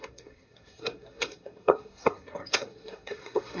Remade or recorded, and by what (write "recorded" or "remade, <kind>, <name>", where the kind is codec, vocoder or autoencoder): remade, codec, SNAC